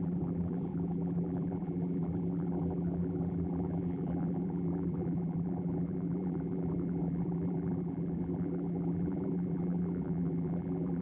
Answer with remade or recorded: remade